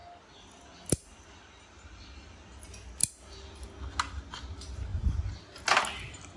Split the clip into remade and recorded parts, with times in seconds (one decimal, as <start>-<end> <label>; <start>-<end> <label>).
0.0-6.4 recorded